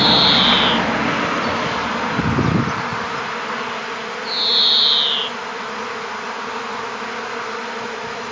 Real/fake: real